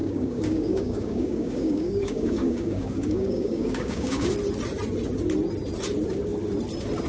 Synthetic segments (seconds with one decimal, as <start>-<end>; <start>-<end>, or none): 0.0-4.3